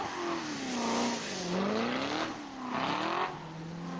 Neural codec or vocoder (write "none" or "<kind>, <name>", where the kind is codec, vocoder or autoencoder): none